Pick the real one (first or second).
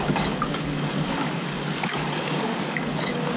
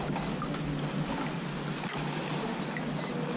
second